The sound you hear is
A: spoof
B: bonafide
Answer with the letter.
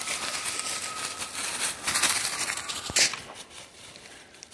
B